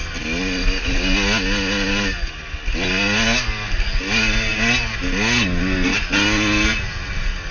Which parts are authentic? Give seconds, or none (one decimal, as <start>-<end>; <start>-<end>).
0.0-7.5